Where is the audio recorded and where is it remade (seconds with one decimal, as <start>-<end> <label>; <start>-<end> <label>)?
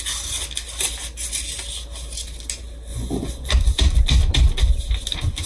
0.0-2.9 recorded; 2.9-3.5 remade; 3.5-5.5 recorded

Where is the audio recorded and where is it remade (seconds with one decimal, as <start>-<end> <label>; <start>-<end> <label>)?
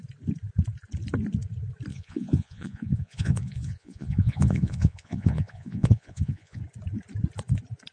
0.0-1.9 recorded; 1.9-6.6 remade; 6.6-7.9 recorded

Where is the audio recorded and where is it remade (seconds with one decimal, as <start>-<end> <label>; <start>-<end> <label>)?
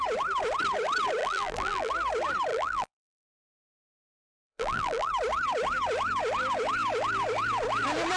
0.0-1.2 recorded; 1.2-1.9 remade; 1.9-2.5 recorded; 2.5-5.1 remade; 5.1-8.2 recorded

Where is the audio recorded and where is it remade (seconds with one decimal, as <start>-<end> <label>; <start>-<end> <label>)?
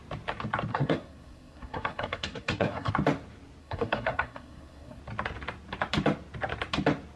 0.0-0.7 recorded; 0.7-2.9 remade; 2.9-3.6 recorded; 3.6-5.0 remade; 5.0-7.2 recorded